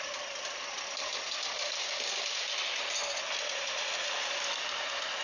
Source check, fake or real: real